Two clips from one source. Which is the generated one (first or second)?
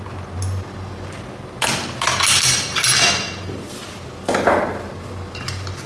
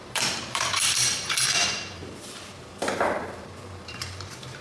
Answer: second